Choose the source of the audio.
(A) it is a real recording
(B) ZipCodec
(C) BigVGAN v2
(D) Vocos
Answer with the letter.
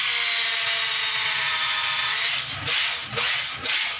A